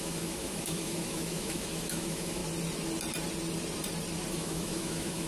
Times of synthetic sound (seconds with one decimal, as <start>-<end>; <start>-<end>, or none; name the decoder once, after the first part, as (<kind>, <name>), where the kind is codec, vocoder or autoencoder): 0.0-2.4 (autoencoder, DAC-VAE); 4.3-5.3